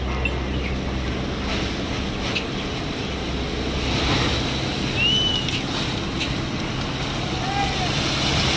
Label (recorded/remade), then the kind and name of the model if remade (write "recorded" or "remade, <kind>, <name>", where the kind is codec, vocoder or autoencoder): recorded